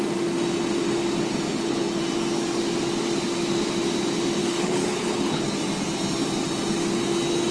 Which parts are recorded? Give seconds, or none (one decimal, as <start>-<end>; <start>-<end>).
0.0-1.5; 2.0-4.4; 5.4-7.5